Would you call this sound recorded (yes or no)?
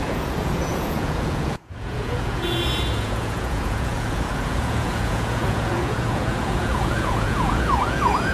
no